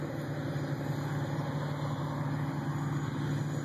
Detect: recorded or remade recorded